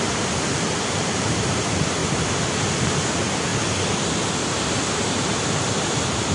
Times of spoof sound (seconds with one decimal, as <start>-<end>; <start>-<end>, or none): 0.0-3.5; 4.9-6.3